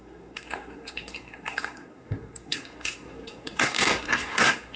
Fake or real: fake